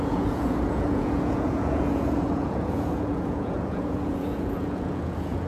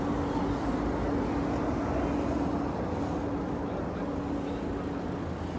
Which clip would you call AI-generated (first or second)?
first